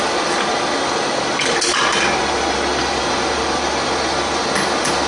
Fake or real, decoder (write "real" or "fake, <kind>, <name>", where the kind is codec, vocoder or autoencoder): fake, vocoder, BigVGAN v2